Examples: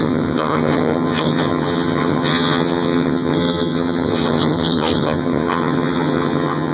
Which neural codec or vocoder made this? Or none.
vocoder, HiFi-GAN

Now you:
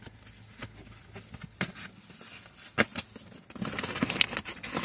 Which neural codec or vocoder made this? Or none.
none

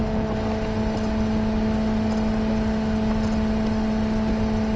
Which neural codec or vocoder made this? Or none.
none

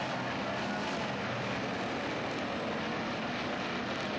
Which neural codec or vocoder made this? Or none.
none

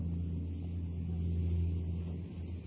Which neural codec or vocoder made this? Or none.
none